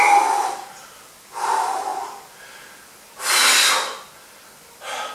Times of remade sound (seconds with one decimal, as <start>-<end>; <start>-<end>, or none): none

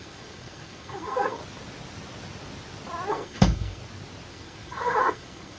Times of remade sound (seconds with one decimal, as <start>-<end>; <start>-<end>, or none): 0.0-1.4; 3.1-3.8; 4.3-5.6

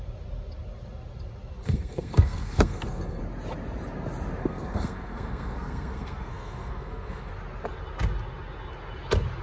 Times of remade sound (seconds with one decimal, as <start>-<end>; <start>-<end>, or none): 1.6-3.2; 4.4-7.3

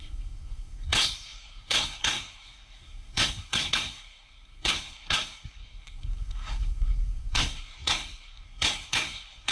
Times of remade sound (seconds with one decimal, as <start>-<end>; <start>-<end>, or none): 0.0-9.5